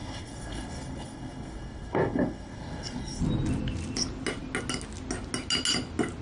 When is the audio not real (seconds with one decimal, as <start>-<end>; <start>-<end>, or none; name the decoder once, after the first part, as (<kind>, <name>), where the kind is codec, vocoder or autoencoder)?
0.0-3.2 (codec, SNAC)